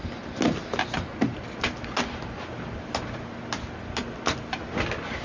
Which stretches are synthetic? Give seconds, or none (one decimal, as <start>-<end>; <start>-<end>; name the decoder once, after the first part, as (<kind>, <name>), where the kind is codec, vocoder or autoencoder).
none